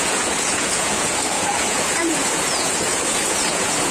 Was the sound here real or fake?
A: fake